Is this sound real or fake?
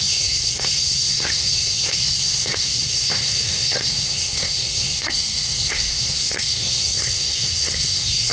fake